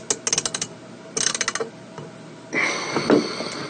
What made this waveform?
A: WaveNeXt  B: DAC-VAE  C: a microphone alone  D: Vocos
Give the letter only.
C